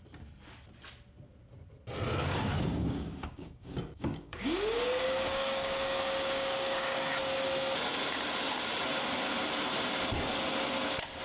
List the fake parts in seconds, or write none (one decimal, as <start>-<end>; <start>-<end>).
2.3-7.2